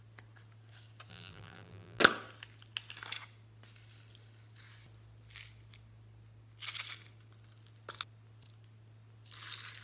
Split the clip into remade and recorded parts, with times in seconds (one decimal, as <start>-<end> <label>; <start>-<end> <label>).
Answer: 0.0-1.1 recorded; 1.1-2.0 remade; 2.0-9.8 recorded